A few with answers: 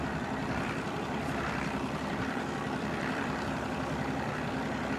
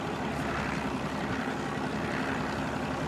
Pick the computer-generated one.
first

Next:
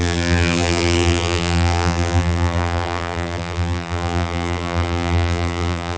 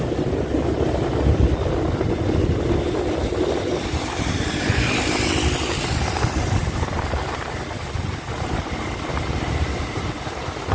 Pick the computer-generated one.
first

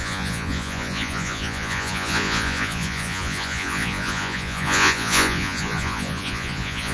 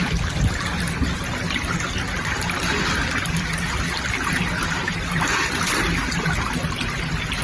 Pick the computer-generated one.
first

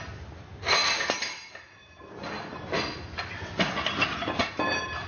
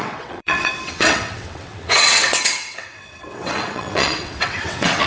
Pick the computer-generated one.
second